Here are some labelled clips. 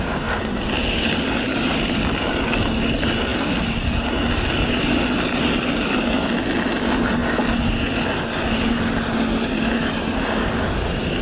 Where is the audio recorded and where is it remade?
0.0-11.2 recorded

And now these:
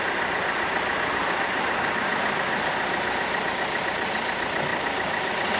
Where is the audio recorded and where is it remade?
0.0-5.6 recorded

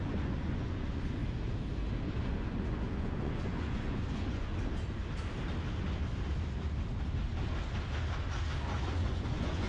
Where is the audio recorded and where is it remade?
0.0-1.2 remade; 1.2-2.2 recorded; 2.2-4.5 remade; 4.5-9.0 recorded; 9.0-9.7 remade

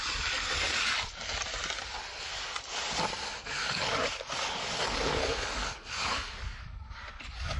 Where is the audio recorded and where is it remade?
0.0-3.6 recorded; 3.6-7.6 remade

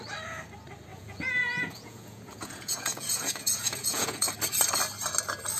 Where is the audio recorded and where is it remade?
0.0-0.9 recorded; 0.9-4.3 remade; 4.3-5.6 recorded

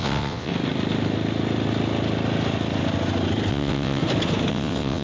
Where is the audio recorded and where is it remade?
0.0-0.5 remade; 0.5-3.5 recorded; 3.5-4.0 remade; 4.0-4.5 recorded; 4.5-5.0 remade